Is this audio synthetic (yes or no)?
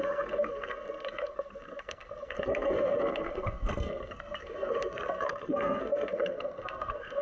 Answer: yes